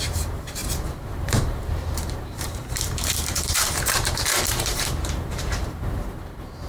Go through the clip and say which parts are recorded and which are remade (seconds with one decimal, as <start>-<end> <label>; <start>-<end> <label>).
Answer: 0.0-6.7 remade